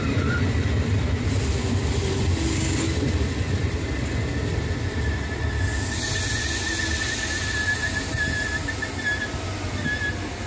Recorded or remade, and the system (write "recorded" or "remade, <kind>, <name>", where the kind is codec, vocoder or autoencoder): recorded